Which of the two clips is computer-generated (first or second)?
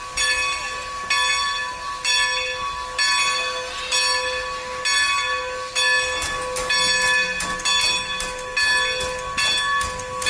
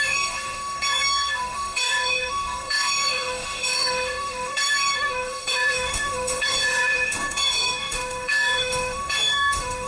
second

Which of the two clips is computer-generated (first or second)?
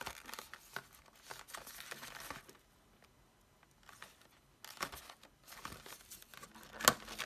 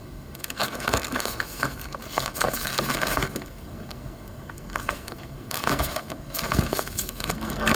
second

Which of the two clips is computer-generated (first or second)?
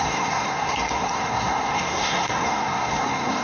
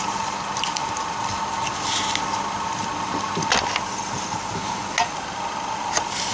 first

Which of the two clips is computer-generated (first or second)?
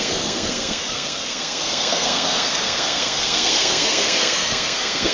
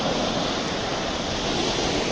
first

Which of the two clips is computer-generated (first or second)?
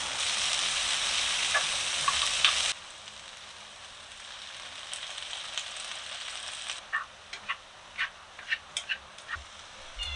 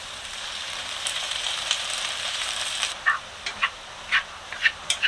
second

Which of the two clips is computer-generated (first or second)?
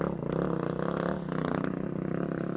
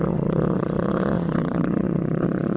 second